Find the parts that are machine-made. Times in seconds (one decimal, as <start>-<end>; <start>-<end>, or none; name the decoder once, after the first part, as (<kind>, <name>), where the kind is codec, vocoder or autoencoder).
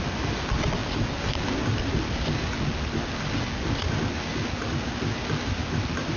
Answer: none